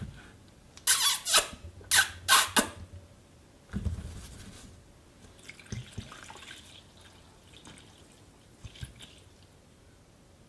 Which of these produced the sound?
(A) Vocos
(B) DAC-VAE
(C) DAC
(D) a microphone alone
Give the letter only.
D